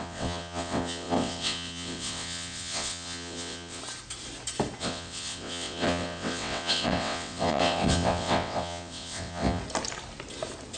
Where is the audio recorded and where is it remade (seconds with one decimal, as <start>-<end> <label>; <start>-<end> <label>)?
0.0-3.8 remade; 3.8-4.8 recorded; 4.8-9.6 remade; 9.6-10.8 recorded